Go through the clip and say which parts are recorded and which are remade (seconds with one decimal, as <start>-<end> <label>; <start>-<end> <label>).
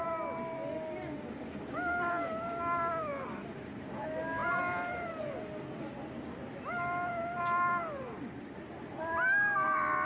0.0-10.1 recorded